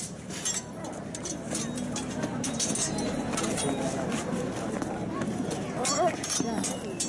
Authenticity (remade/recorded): recorded